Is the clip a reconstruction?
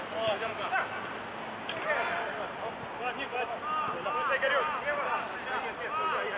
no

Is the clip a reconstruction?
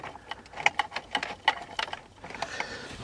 no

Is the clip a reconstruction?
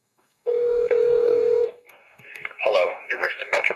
yes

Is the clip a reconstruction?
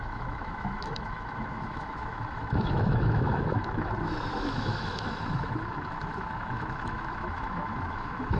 yes